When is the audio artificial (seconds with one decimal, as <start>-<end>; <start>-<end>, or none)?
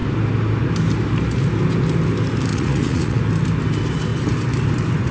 2.5-3.2